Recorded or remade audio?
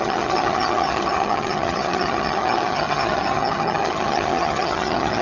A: remade